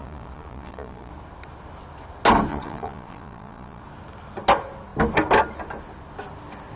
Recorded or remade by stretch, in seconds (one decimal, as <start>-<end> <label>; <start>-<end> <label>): 0.0-1.1 remade; 1.1-2.5 recorded; 2.5-3.8 remade; 3.8-6.8 recorded